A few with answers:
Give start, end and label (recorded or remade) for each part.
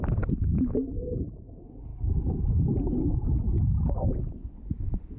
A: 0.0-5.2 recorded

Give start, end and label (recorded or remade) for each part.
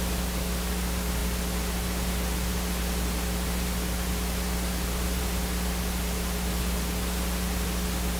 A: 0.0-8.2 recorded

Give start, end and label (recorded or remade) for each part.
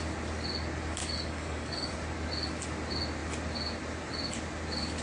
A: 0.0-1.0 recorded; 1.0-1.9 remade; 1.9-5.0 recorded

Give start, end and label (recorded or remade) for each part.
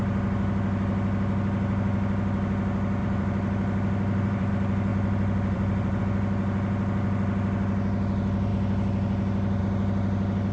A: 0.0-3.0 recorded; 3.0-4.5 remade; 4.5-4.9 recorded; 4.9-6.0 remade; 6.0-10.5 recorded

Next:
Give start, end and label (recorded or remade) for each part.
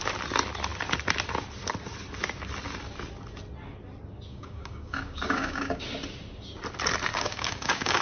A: 0.0-4.3 recorded; 4.3-5.8 remade; 5.8-7.1 recorded; 7.1-8.0 remade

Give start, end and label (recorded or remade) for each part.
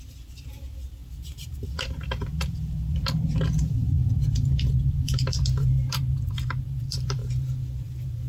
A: 0.0-8.3 remade